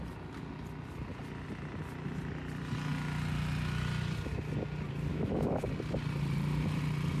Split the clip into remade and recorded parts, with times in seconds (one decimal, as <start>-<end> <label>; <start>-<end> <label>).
0.0-5.1 recorded; 5.1-5.6 remade; 5.6-7.2 recorded